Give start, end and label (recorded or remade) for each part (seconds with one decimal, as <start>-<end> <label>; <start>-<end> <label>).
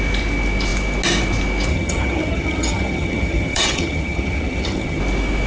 0.0-1.7 recorded; 1.7-5.0 remade; 5.0-5.5 recorded